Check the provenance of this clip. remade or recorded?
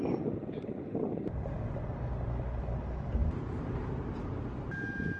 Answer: recorded